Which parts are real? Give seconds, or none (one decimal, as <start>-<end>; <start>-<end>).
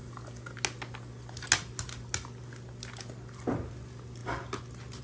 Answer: 0.0-5.0